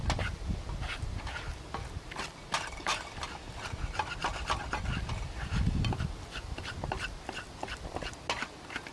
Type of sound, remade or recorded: recorded